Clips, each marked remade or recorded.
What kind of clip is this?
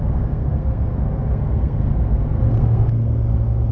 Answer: remade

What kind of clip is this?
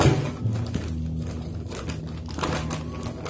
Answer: recorded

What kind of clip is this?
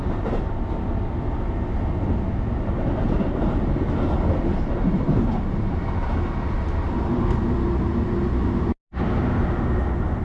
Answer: recorded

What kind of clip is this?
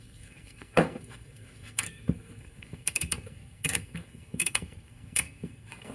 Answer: remade